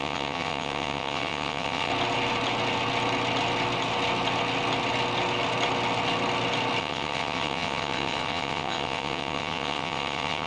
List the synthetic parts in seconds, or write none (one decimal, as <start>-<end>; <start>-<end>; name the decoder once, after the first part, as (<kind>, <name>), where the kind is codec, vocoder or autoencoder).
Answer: 0.0-1.9 (vocoder, WaveNeXt); 6.8-10.5

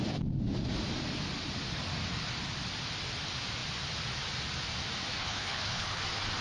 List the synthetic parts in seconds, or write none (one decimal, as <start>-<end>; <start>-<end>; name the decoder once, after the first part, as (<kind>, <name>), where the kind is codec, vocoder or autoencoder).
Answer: 5.2-6.0 (codec, HILCodec)